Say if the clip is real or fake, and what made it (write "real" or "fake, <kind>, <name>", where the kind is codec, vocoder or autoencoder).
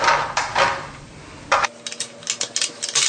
real